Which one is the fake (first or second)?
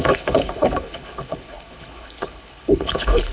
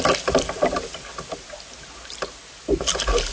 first